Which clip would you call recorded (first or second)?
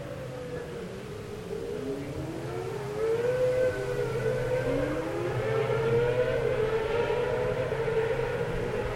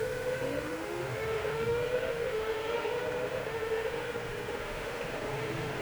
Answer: first